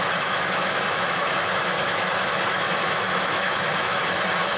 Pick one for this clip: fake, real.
fake